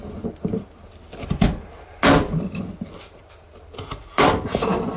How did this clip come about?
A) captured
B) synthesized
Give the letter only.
A